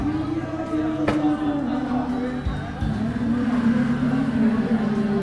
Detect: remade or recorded recorded